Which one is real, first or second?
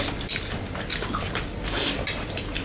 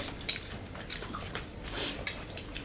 first